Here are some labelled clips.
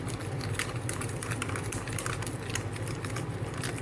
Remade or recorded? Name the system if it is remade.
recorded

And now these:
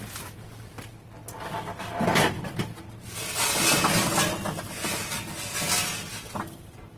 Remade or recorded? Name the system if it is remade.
recorded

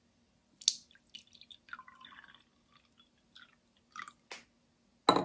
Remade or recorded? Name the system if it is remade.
recorded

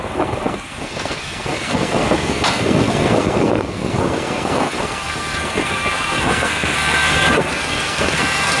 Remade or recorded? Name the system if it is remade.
remade, codec, SNAC